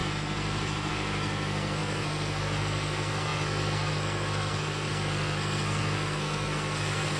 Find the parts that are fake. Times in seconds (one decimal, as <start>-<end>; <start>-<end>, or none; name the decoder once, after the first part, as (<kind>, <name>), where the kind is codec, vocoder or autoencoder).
0.0-7.2 (codec, SNAC)